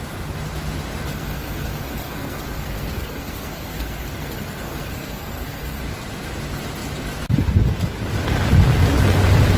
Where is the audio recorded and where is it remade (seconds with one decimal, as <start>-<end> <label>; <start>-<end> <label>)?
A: 0.0-1.1 recorded; 1.1-5.8 remade; 5.8-9.6 recorded